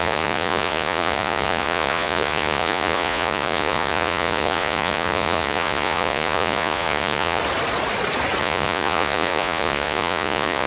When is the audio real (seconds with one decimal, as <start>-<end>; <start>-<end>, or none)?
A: 7.4-8.4

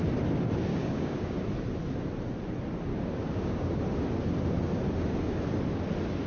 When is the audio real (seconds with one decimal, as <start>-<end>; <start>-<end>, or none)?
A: 0.0-0.7; 1.4-2.9; 3.8-6.3

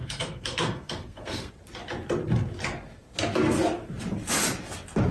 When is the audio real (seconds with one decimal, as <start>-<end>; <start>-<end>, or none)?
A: 1.5-5.1